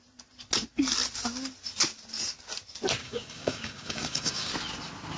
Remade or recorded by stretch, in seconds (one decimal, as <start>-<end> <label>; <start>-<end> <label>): 0.0-3.0 recorded; 3.0-4.5 remade; 4.5-5.2 recorded